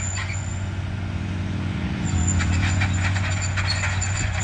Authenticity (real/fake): fake